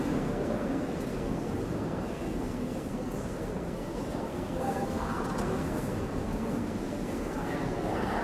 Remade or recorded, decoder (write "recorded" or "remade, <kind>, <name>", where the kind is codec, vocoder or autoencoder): remade, codec, SNAC